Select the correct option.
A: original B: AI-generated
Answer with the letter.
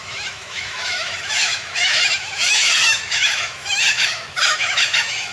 B